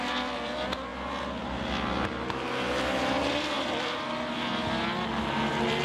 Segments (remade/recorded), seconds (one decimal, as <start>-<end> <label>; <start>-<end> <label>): 0.0-5.8 recorded